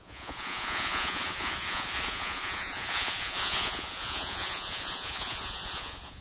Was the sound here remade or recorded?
remade